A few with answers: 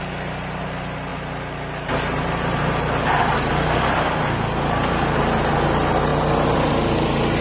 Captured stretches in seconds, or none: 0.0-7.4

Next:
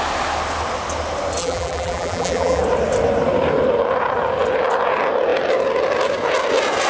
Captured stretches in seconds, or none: 0.0-1.4; 2.6-6.9

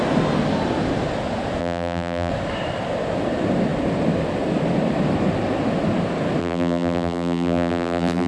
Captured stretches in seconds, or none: 0.0-1.6; 2.3-6.4